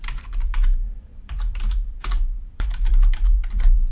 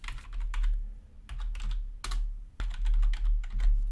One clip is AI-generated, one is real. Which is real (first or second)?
second